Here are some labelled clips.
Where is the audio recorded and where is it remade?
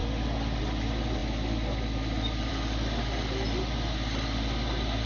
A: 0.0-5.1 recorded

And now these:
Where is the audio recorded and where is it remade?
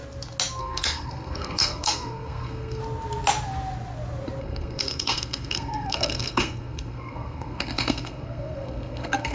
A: 0.0-0.6 recorded; 0.6-2.8 remade; 2.8-4.4 recorded; 4.4-9.3 remade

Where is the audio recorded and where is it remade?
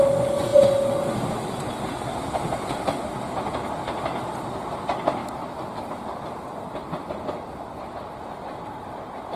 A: 0.0-9.4 recorded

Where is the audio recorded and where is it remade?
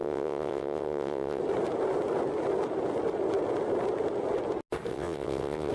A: 0.0-1.4 remade; 1.4-4.9 recorded; 4.9-5.7 remade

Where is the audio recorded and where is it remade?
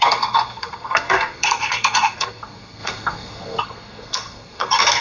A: 0.0-5.0 remade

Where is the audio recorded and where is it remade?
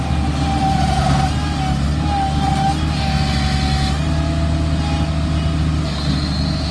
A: 0.0-6.7 recorded